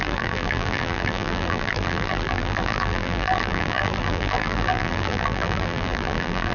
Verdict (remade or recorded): remade